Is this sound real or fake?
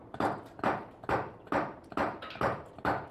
real